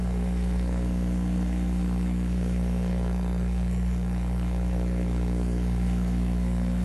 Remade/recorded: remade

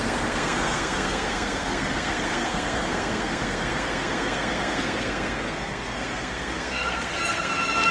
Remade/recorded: remade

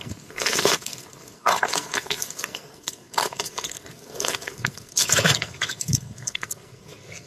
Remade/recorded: remade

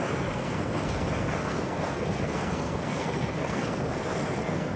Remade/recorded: remade